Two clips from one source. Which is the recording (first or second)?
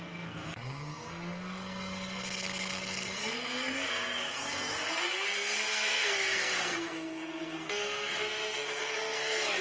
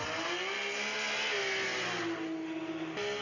second